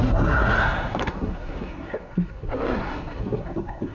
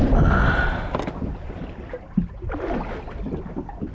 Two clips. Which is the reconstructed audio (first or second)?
first